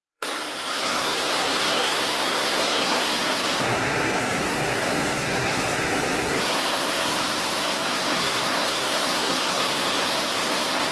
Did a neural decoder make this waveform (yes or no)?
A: yes